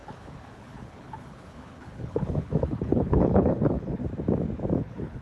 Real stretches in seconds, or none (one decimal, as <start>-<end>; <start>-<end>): 4.0-4.8